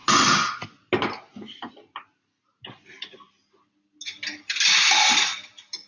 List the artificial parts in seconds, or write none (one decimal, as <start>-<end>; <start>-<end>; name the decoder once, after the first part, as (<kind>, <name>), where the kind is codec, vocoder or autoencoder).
none

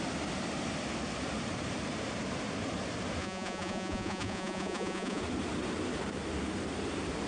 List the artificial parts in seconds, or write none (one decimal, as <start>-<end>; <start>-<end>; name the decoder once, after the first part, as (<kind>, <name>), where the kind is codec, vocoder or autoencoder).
3.2-5.2 (vocoder, Vocos)